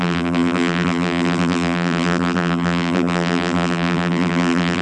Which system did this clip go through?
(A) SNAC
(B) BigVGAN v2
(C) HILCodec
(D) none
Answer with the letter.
B